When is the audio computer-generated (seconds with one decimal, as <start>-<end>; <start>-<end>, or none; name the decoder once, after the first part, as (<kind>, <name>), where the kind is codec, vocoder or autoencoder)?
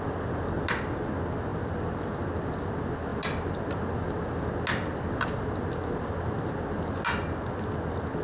none